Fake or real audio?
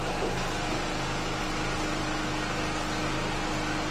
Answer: real